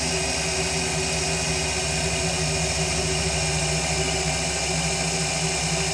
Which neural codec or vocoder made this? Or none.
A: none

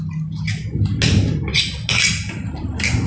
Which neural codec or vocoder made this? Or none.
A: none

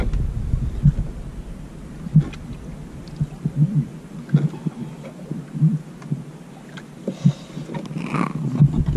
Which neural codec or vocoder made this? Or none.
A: none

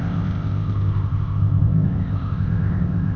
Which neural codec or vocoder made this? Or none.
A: codec, ZipCodec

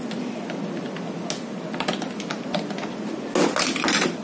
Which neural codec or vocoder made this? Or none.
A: none